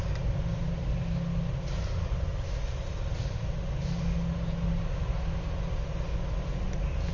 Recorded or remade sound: recorded